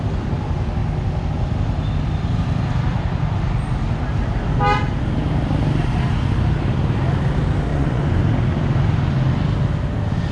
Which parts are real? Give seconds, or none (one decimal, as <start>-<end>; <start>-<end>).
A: 0.0-7.7; 8.2-10.3